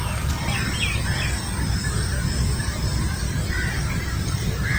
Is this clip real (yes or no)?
yes